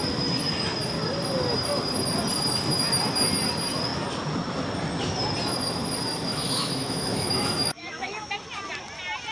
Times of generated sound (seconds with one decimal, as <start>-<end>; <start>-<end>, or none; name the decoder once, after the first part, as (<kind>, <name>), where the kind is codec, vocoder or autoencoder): 6.3-8.3 (autoencoder, DAC-VAE)